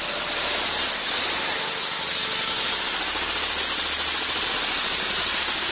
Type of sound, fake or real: real